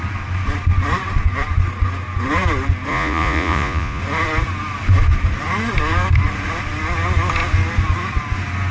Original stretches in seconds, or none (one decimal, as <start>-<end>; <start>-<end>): 0.0-2.9; 4.0-8.7